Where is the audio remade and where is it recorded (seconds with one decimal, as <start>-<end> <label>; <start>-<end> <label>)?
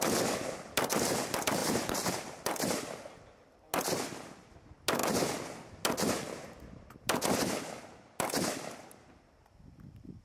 0.0-1.6 recorded; 1.6-2.3 remade; 2.3-10.2 recorded